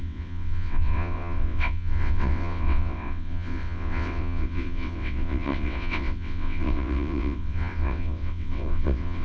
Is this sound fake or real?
fake